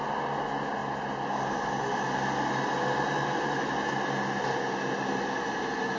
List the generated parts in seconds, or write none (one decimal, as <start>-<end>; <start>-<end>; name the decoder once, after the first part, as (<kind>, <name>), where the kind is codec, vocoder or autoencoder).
none